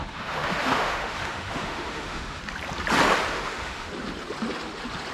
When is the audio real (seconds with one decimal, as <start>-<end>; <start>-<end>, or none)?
2.4-3.3; 3.9-5.1